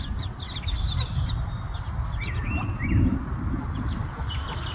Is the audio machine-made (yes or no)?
no